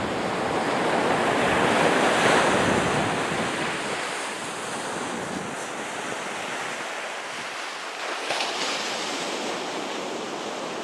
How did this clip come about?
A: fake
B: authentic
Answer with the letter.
B